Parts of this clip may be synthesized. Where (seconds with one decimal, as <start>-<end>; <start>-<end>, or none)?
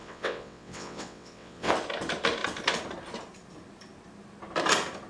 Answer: 0.0-1.7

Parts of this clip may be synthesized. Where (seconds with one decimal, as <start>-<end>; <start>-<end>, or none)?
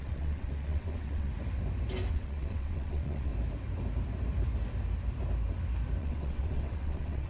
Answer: 0.0-1.3; 2.1-3.3; 6.0-7.3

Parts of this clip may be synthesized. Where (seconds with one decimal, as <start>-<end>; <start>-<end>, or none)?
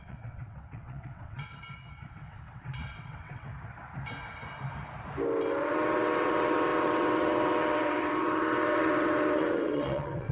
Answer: 0.0-1.5; 2.1-3.5; 5.6-10.3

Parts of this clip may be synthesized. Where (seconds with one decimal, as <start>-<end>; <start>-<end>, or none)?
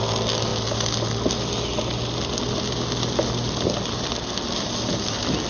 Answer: none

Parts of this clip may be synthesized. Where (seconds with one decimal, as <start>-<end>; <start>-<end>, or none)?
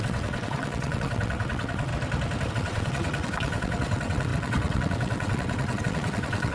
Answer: 0.0-1.9; 2.5-6.5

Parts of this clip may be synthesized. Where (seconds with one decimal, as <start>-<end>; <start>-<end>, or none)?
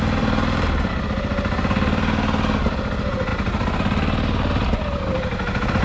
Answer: none